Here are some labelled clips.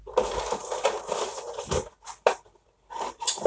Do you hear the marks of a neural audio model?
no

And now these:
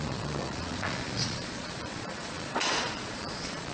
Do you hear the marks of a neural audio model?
yes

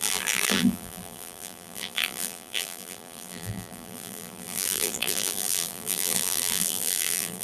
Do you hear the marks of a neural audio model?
yes